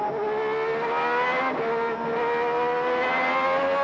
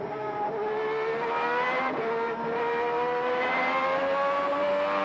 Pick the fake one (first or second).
second